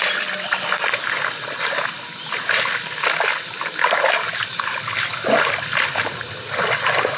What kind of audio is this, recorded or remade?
recorded